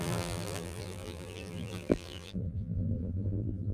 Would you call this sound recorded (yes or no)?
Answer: no